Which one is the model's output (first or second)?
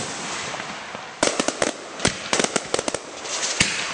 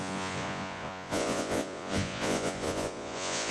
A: second